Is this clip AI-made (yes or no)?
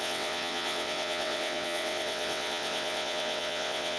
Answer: yes